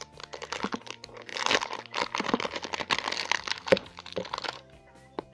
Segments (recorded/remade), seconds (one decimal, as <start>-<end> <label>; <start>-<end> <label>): 0.0-5.3 recorded